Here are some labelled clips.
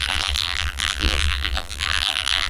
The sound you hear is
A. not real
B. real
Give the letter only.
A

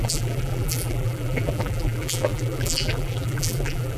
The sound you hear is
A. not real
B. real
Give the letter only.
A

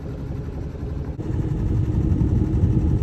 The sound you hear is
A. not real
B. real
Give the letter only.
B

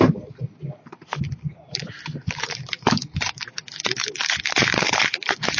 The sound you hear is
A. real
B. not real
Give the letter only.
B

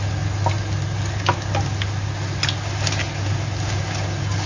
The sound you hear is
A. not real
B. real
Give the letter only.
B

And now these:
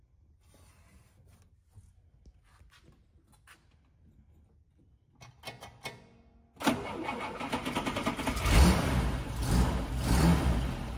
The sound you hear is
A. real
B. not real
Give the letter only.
A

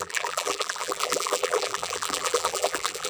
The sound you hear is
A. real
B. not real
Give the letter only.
B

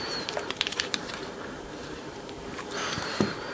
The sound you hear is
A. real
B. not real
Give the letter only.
B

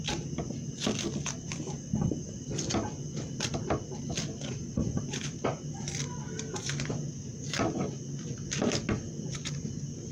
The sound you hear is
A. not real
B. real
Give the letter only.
B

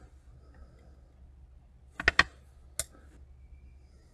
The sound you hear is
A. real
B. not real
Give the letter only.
A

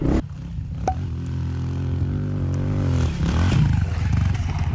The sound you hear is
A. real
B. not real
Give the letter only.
A